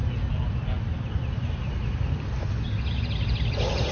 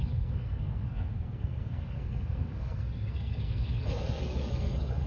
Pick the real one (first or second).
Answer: first